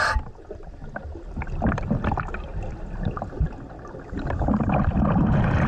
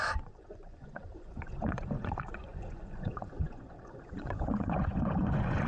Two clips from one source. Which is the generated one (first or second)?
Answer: second